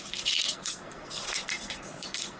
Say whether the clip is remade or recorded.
remade